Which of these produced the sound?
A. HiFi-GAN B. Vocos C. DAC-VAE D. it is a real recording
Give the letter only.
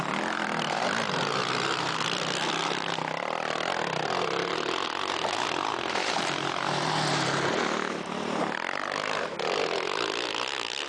D